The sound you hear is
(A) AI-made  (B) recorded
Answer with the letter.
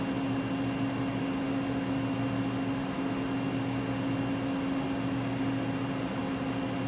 B